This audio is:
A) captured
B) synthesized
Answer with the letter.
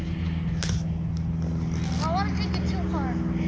A